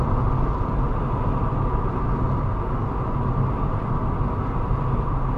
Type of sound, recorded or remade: recorded